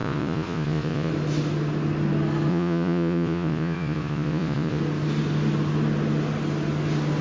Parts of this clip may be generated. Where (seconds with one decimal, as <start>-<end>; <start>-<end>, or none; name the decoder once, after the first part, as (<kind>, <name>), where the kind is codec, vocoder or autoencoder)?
0.0-1.1 (vocoder, Vocos); 2.5-4.8